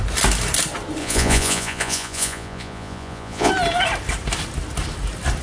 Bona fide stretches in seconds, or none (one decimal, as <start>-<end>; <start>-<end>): 0.0-1.0; 3.5-5.4